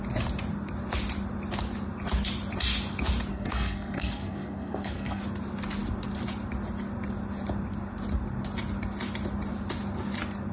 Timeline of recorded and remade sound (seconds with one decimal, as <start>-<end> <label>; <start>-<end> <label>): 0.0-3.3 recorded; 3.3-5.2 remade; 5.2-10.5 recorded